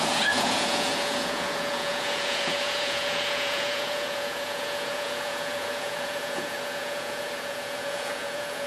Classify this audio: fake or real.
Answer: fake